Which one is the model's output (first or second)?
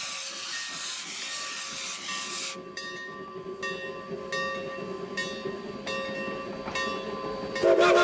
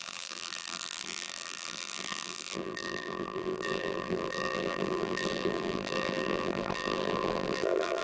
second